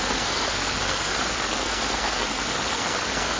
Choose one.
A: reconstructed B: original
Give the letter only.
A